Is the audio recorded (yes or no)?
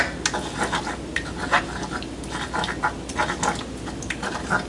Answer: yes